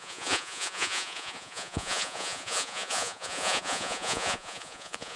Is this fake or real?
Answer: fake